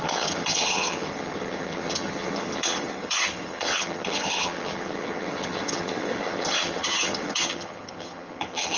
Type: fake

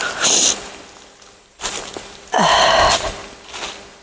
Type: real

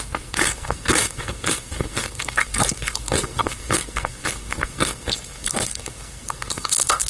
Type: fake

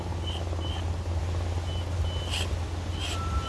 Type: real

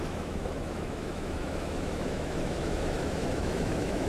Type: fake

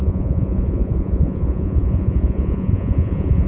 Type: fake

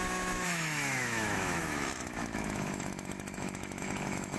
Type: fake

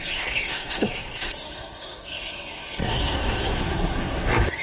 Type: fake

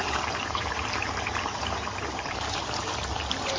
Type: fake